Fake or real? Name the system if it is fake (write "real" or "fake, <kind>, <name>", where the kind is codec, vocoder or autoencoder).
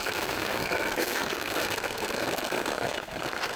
fake, codec, SNAC